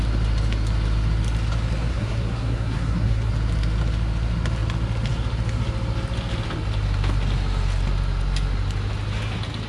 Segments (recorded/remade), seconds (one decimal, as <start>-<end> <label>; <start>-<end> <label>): 0.0-1.9 recorded; 1.9-3.3 remade; 3.3-9.7 recorded